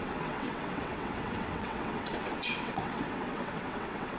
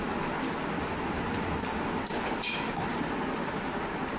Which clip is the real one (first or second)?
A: second